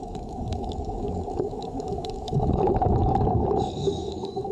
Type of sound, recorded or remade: remade